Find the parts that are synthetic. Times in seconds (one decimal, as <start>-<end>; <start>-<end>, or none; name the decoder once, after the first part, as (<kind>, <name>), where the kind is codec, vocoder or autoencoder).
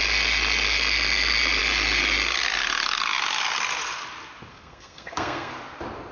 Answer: 4.5-5.5 (codec, SNAC)